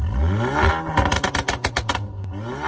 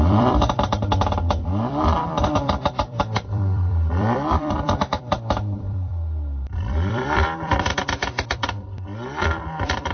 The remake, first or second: second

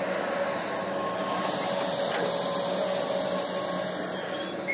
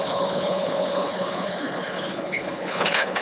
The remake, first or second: second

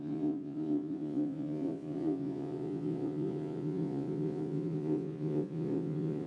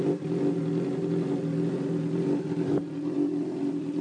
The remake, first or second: first